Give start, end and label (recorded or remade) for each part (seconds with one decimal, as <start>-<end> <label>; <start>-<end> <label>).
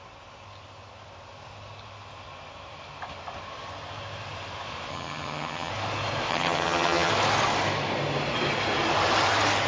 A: 0.0-4.9 recorded; 4.9-5.7 remade; 5.7-6.3 recorded; 6.3-7.1 remade; 7.1-9.7 recorded